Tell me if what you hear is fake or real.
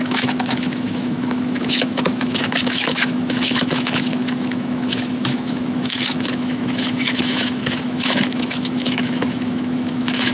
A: fake